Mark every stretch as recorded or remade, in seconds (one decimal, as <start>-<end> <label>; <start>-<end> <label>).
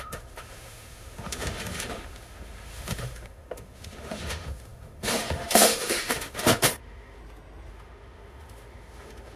0.0-7.2 remade; 7.2-7.7 recorded; 7.7-9.4 remade